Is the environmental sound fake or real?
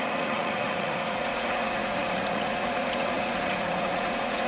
fake